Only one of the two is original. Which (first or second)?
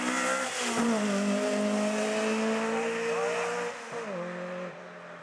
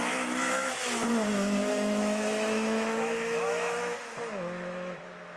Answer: first